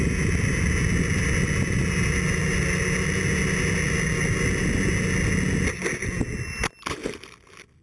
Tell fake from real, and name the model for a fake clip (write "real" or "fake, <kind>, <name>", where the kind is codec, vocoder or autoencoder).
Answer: real